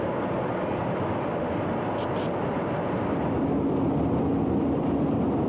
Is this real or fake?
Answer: real